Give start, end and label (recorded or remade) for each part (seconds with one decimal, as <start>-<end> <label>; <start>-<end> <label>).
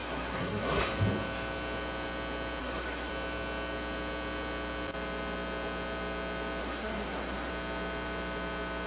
0.0-0.8 remade; 0.8-2.6 recorded; 2.6-3.1 remade; 3.1-6.6 recorded; 6.6-7.5 remade; 7.5-8.9 recorded